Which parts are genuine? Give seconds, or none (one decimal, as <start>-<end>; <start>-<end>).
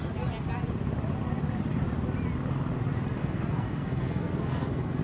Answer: 0.0-3.2